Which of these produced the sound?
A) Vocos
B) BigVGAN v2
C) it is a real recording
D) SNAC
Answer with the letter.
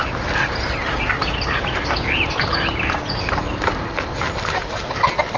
B